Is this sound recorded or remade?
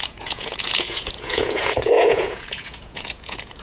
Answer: remade